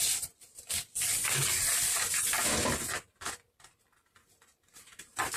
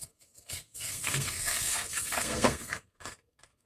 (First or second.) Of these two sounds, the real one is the first